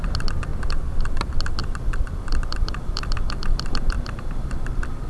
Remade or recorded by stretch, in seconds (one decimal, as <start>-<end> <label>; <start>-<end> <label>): 0.0-1.6 recorded; 1.6-5.1 remade